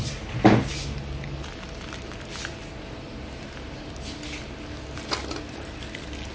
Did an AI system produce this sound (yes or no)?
no